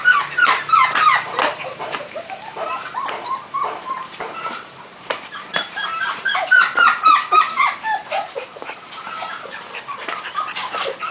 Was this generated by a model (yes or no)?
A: yes